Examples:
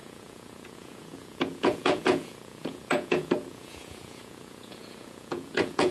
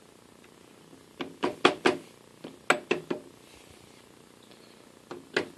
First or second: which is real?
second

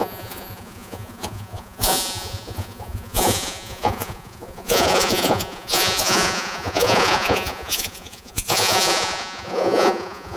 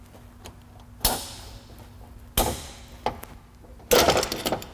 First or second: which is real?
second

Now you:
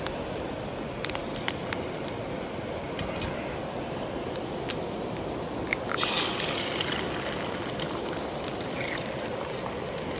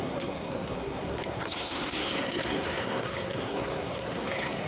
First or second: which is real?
first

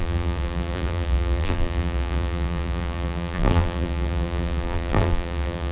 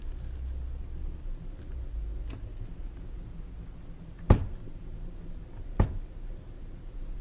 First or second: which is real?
second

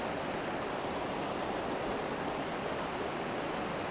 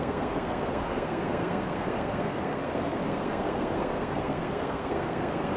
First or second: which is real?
first